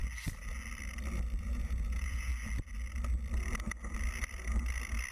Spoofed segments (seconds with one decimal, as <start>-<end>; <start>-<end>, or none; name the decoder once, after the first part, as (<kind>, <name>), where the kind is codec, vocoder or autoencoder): 1.4-2.3 (vocoder, Vocos)